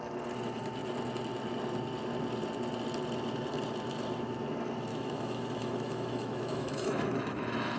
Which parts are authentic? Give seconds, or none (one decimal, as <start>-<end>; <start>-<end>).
0.0-4.9